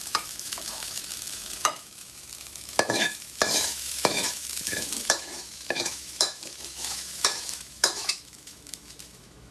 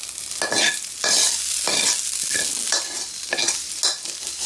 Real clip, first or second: second